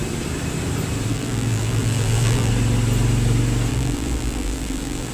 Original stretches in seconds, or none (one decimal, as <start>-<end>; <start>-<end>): 0.0-1.1; 2.5-3.7